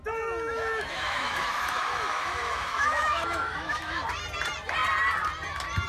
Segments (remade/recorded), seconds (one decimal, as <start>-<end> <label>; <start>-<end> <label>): 0.0-0.5 recorded; 0.5-4.0 remade; 4.0-5.9 recorded